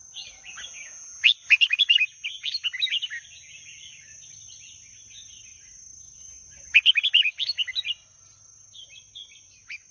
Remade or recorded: recorded